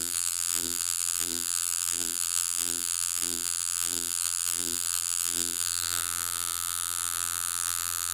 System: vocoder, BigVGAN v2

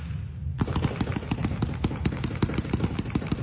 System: none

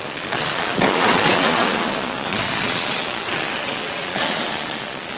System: vocoder, Vocos